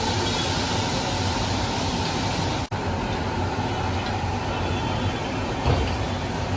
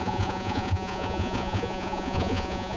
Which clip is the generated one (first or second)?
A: second